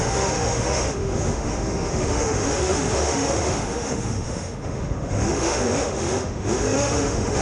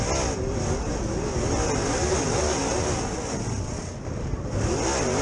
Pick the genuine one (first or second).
second